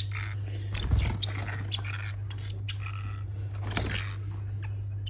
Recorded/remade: recorded